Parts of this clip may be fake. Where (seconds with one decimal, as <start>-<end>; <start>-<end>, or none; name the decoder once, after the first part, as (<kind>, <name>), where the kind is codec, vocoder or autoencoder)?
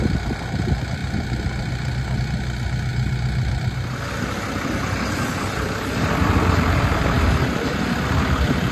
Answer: none